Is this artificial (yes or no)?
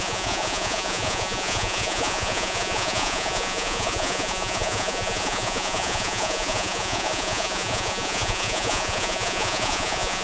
yes